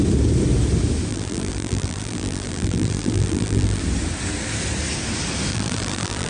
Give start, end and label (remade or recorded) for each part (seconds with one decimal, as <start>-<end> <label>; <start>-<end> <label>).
0.0-1.1 recorded; 1.1-3.8 remade; 3.8-5.5 recorded; 5.5-6.3 remade